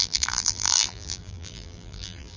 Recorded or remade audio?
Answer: remade